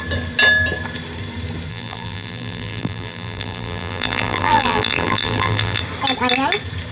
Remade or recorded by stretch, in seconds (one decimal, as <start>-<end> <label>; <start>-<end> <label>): 0.0-1.7 recorded; 1.7-5.8 remade; 5.8-6.9 recorded